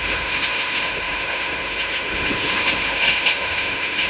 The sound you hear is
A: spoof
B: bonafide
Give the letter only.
A